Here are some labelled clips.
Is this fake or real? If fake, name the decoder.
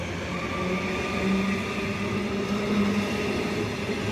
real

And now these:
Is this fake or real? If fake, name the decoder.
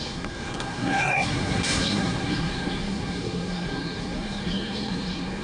fake, codec, SNAC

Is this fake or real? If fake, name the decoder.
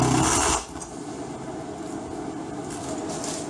real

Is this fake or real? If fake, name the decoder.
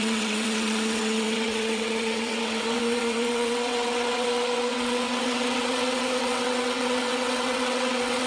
fake, vocoder, WaveNeXt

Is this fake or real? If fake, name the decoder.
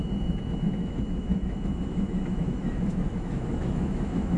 fake, autoencoder, DAC-VAE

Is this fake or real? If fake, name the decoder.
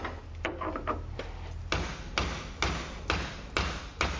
real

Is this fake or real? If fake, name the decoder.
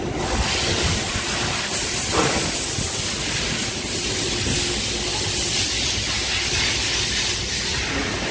real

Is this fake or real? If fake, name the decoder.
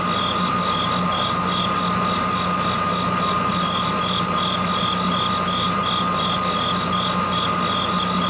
real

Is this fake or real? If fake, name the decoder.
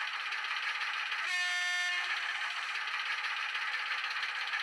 real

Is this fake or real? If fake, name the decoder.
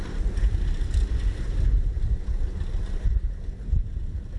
real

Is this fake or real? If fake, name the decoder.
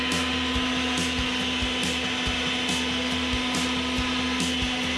real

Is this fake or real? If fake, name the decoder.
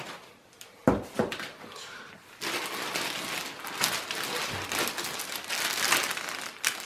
real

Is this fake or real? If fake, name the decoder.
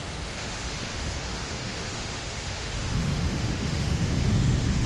fake, autoencoder, DAC-VAE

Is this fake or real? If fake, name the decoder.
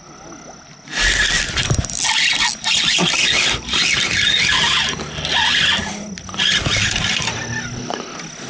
real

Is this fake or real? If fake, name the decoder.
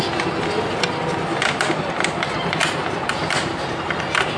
real